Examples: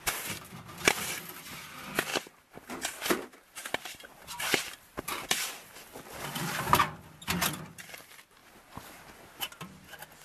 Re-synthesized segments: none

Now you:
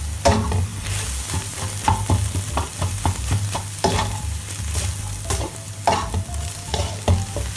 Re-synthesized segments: none

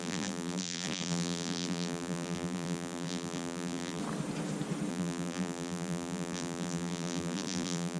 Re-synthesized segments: 0.0-4.0 (vocoder, BigVGAN v2); 4.9-8.0

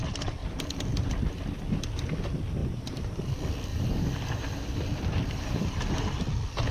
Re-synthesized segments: 0.4-1.1 (vocoder, BigVGAN v2); 2.6-3.3; 3.7-6.2

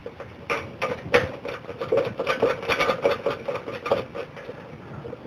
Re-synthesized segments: 0.0-3.0 (vocoder, BigVGAN v2)